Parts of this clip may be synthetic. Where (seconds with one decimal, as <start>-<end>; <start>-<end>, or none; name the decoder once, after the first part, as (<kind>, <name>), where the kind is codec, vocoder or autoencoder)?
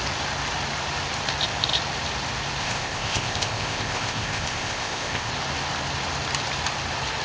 2.6-5.3 (codec, ZipCodec)